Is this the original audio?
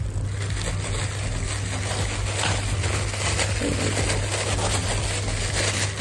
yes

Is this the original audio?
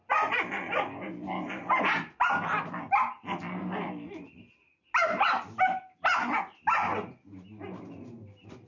yes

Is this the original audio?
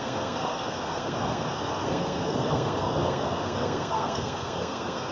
no